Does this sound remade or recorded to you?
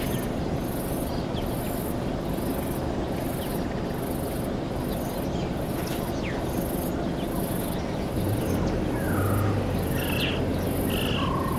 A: recorded